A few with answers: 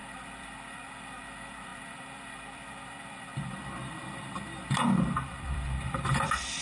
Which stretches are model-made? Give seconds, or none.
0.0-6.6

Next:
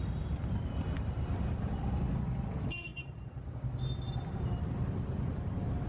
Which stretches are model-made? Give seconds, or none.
2.9-3.5

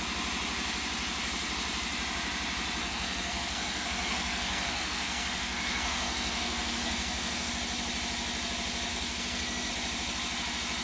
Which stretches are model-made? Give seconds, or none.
2.8-7.5; 8.9-9.7

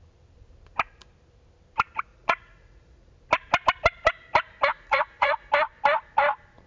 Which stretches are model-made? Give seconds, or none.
2.1-3.1; 4.7-5.5